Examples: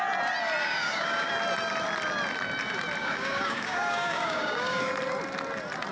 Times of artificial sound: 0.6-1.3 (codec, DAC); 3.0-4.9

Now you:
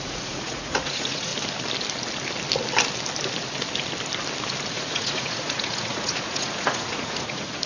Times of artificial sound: 0.0-1.3 (vocoder, Vocos); 4.7-7.7

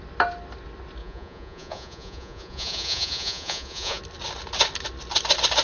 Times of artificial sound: 1.0-4.0 (vocoder, Vocos)

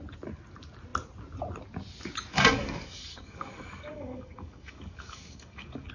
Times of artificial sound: 2.3-5.9 (codec, DAC)

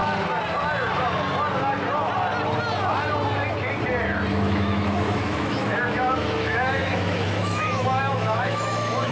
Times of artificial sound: 4.3-9.1 (autoencoder, DAC-VAE)

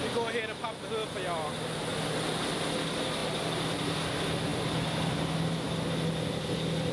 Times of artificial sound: none

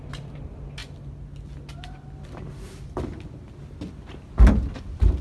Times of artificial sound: none

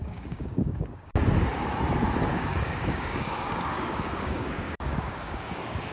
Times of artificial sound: 0.0-1.1 (codec, DAC); 2.3-5.9